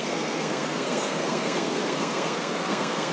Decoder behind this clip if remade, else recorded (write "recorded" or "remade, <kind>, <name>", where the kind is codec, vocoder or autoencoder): remade, codec, SNAC